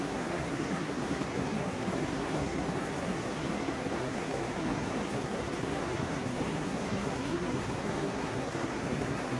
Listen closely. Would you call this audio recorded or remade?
remade